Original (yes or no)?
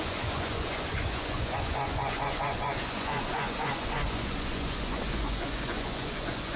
no